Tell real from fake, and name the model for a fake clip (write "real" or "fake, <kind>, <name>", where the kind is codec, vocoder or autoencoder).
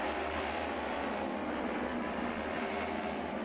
real